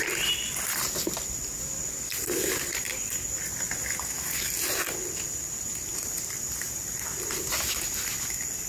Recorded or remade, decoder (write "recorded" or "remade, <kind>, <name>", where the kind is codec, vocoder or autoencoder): recorded